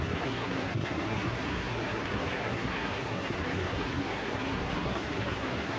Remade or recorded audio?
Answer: remade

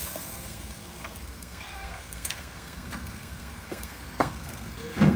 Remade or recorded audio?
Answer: remade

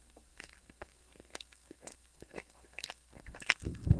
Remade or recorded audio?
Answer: remade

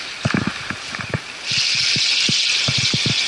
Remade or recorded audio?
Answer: recorded